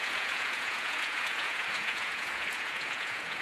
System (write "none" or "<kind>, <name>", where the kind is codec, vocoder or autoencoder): vocoder, Vocos